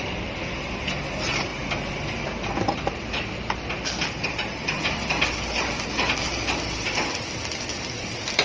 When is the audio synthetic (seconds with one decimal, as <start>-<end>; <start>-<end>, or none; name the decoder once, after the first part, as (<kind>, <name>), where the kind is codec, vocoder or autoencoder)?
none